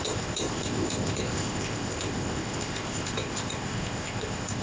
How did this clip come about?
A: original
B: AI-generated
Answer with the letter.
B